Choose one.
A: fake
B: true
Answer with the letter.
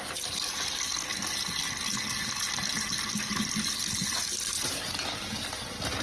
B